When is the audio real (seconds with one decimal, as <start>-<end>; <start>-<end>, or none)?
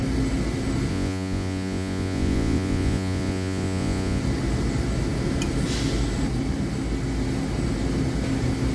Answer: 0.0-0.9; 4.2-8.7